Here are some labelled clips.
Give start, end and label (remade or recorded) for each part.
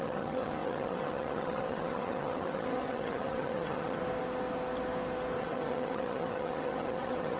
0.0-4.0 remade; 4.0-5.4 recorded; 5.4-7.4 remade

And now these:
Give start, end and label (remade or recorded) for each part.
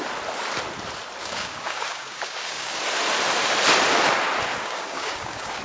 0.0-1.2 recorded; 1.2-2.8 remade; 2.8-4.6 recorded; 4.6-5.6 remade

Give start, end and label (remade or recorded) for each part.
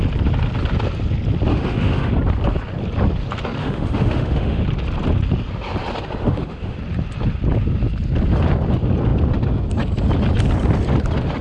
0.0-1.5 recorded; 1.5-2.1 remade; 2.1-3.6 recorded; 3.6-4.6 remade; 4.6-6.2 recorded; 6.2-6.8 remade; 6.8-11.4 recorded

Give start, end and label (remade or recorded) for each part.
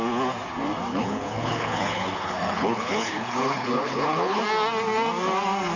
0.0-0.9 recorded; 0.9-4.4 remade; 4.4-5.8 recorded